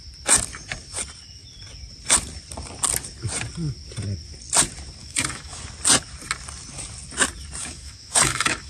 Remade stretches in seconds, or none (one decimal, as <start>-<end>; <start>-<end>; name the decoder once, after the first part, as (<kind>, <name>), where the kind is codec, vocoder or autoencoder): 5.0-5.6 (autoencoder, DAC-VAE); 7.6-8.7